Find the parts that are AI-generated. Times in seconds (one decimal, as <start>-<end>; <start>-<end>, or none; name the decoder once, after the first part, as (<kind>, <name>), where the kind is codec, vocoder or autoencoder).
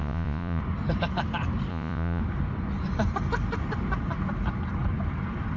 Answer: 0.0-0.6 (vocoder, Vocos); 1.7-2.2